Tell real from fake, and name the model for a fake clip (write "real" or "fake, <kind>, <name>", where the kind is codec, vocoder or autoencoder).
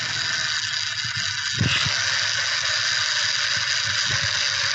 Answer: real